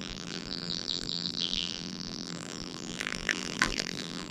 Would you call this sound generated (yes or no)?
yes